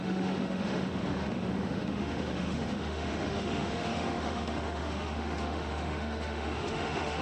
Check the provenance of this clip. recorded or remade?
remade